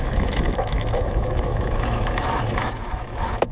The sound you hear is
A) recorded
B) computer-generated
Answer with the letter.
B